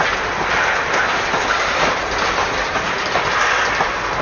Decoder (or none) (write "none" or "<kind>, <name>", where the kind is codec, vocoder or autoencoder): none